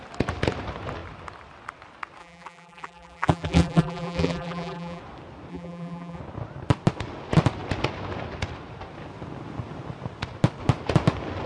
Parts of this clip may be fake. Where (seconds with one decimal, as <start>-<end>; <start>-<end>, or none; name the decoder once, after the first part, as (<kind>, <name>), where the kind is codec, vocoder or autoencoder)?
2.2-5.0 (vocoder, BigVGAN v2); 5.5-6.2